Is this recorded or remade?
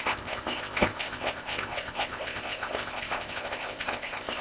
remade